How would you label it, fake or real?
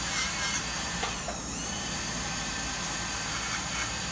fake